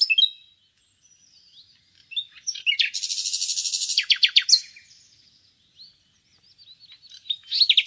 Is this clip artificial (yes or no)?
no